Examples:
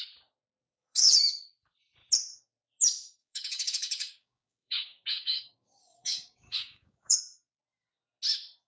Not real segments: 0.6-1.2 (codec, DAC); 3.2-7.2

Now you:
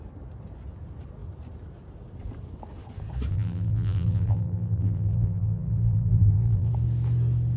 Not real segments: 3.3-6.7 (vocoder, BigVGAN v2)

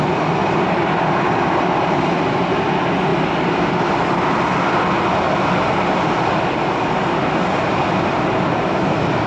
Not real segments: 0.4-0.9 (vocoder, BigVGAN v2); 3.1-3.7

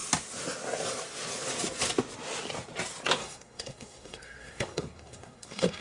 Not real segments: 3.2-5.8 (codec, SNAC)